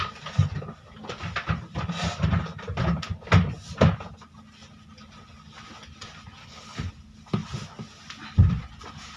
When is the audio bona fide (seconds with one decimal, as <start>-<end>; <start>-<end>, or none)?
0.0-6.4; 6.9-9.2